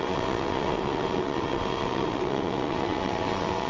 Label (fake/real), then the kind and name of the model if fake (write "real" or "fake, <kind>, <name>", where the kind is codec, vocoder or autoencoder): fake, vocoder, WaveNeXt